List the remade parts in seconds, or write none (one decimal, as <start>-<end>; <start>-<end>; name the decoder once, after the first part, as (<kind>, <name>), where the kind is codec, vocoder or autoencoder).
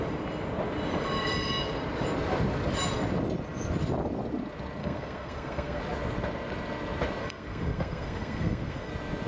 4.8-5.8 (codec, SNAC); 7.2-8.9